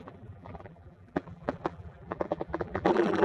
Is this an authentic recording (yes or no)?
no